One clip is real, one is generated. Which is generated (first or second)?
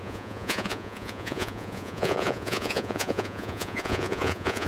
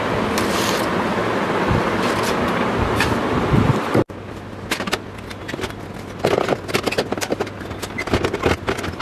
first